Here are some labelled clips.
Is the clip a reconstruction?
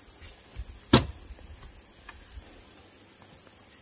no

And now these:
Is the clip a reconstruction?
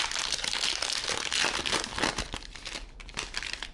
no